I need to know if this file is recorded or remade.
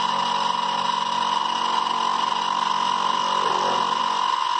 recorded